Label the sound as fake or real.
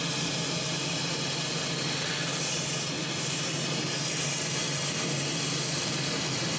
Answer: real